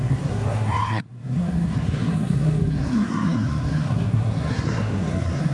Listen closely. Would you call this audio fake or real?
fake